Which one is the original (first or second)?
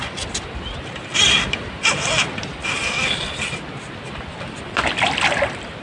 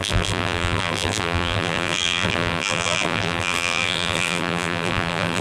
first